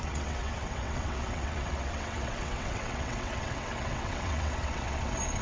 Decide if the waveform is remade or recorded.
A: remade